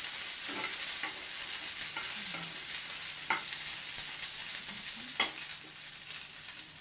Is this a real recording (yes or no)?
yes